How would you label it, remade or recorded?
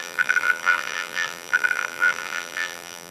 remade